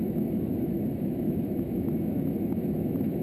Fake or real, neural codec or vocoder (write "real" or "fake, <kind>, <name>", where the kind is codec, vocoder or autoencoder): fake, autoencoder, DAC-VAE